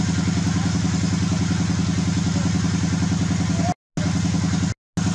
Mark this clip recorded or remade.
recorded